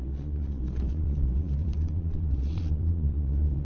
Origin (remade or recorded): remade